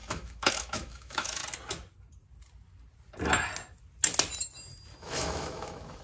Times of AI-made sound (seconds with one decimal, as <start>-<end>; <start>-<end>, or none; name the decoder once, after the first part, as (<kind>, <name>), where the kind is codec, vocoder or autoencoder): 0.0-1.4 (autoencoder, DAC-VAE); 5.0-6.0